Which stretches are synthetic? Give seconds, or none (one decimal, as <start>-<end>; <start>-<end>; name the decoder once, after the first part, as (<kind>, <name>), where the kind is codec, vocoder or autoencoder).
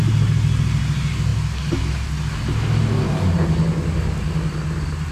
none